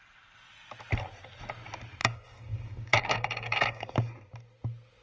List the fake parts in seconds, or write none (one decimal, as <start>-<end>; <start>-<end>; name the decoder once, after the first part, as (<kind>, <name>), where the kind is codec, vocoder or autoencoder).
2.0-3.9 (codec, DAC)